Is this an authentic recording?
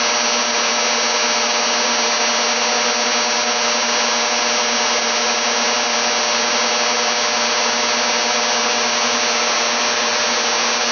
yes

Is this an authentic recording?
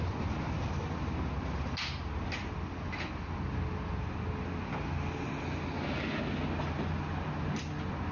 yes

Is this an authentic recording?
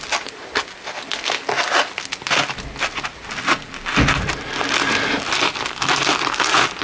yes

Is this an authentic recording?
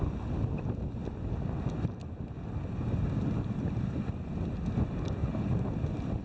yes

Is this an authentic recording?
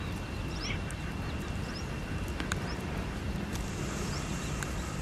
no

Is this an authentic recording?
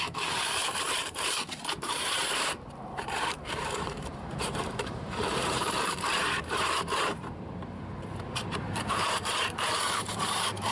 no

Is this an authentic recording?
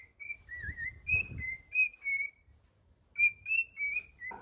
yes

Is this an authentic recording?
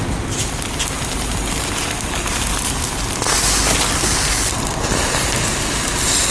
yes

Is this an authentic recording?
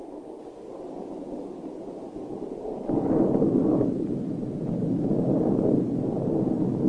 yes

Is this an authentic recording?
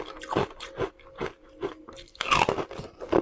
yes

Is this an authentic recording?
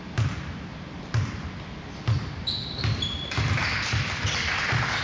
yes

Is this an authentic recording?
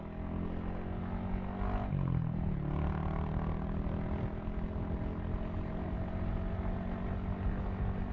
yes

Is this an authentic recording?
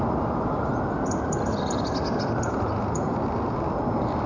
yes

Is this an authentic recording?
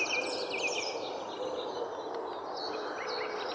yes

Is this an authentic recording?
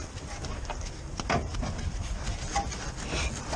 yes